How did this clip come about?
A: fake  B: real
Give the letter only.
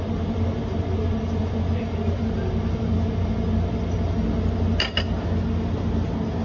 B